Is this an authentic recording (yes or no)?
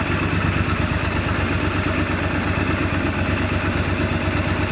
yes